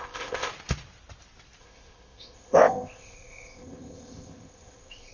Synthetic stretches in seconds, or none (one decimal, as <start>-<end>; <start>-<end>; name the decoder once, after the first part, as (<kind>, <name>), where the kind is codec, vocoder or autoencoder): 0.0-0.5 (codec, ZipCodec); 1.6-5.1